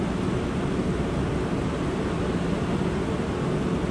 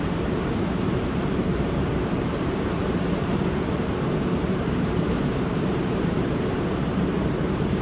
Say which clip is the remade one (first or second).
second